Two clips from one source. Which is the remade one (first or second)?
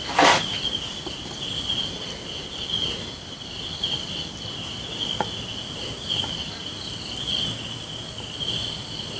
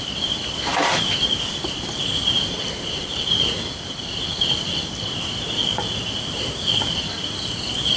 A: second